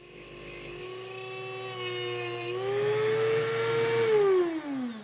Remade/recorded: recorded